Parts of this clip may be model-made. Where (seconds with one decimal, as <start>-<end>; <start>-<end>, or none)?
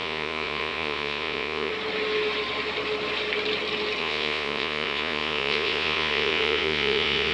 0.0-1.7; 4.0-7.3